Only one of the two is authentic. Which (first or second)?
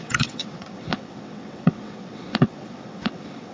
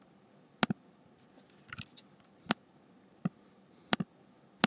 second